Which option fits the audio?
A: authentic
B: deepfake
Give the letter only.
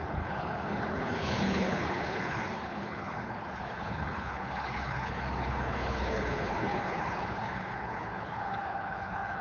B